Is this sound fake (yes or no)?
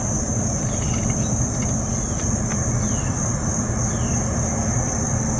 no